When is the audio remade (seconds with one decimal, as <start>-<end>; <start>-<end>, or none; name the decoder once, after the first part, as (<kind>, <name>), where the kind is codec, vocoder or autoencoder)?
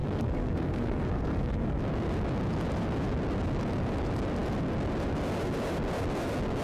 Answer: 0.0-1.8 (codec, SNAC)